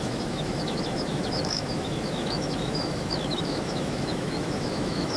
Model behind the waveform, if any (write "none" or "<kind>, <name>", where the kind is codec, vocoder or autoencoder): autoencoder, DAC-VAE